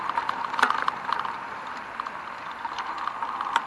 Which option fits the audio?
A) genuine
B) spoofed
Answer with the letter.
A